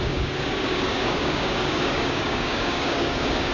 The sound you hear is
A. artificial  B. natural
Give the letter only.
A